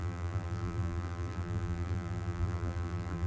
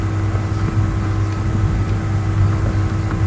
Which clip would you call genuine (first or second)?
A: second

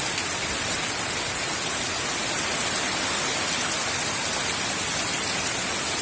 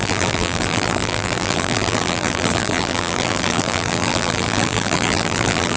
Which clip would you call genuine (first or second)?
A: first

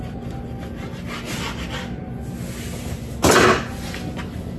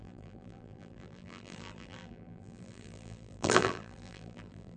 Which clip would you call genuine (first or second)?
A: first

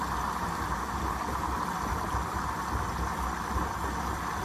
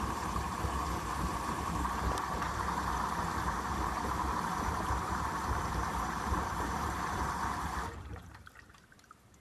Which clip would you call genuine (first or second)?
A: first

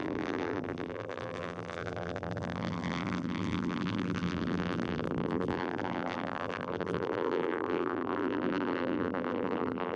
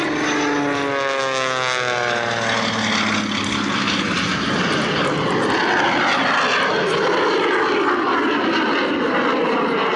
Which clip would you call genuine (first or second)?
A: second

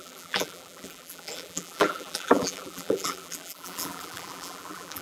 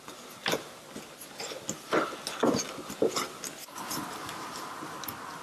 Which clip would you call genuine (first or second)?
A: second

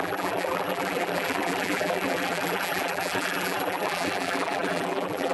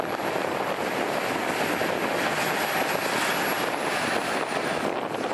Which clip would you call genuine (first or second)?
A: second